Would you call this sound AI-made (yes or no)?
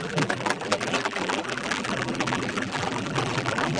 yes